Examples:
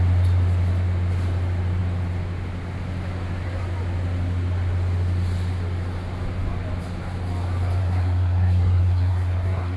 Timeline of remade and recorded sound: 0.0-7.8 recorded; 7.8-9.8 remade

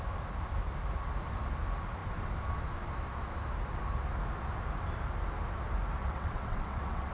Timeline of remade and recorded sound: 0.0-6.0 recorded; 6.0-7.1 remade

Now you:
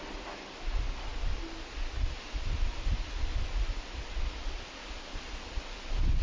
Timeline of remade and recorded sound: 0.0-1.1 remade; 1.1-4.2 recorded; 4.2-4.8 remade; 4.8-5.6 recorded; 5.6-6.2 remade

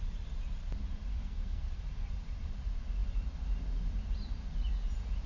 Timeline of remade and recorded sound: 0.0-1.1 recorded; 1.1-1.8 remade; 1.8-5.3 recorded

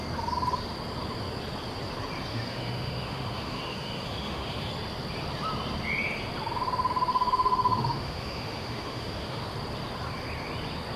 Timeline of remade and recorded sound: 0.0-2.3 recorded; 2.3-4.7 remade; 4.7-7.1 recorded; 7.1-9.4 remade; 9.4-11.0 recorded

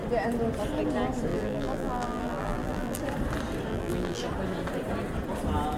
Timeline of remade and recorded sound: 0.0-1.3 recorded; 1.3-3.0 remade; 3.0-3.7 recorded; 3.7-4.2 remade; 4.2-5.8 recorded

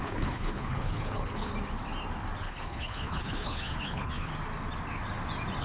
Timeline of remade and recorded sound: 0.0-1.5 remade; 1.5-2.4 recorded; 2.4-4.3 remade; 4.3-5.6 recorded